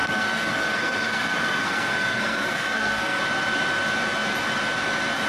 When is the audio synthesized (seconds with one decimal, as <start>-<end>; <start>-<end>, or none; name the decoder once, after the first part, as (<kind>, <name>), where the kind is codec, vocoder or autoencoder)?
0.0-3.2 (codec, SNAC)